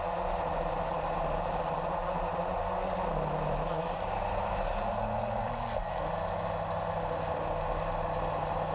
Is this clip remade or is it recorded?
recorded